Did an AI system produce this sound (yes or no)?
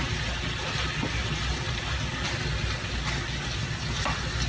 no